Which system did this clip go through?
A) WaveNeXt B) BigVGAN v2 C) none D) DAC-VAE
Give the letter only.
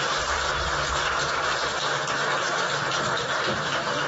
C